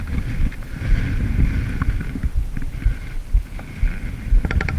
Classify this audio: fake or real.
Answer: real